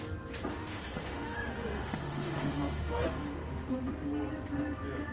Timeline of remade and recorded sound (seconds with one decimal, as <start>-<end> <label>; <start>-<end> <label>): 0.0-0.6 recorded; 0.6-3.7 remade; 3.7-5.1 recorded